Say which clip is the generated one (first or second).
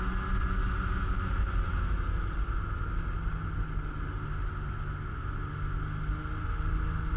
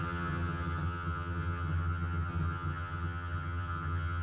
second